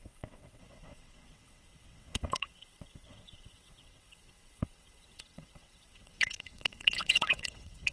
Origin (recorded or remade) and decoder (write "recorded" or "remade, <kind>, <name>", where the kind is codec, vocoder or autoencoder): remade, vocoder, WaveNeXt